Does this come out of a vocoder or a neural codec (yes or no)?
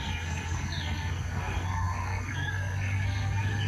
yes